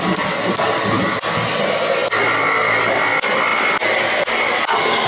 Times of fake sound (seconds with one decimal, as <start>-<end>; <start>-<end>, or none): none